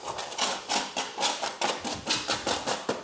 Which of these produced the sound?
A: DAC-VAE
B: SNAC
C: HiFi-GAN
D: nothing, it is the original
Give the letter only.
D